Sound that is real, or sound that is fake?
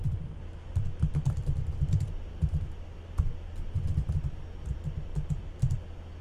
real